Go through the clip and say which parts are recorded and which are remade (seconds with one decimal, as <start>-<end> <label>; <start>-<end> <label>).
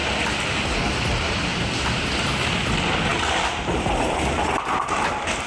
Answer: 0.0-5.5 recorded